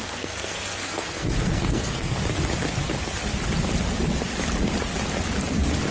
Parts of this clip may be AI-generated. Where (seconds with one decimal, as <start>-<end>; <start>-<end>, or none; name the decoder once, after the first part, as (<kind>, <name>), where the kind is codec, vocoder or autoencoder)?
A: 0.0-2.2 (codec, SNAC)